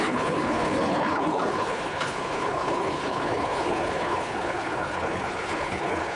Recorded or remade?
remade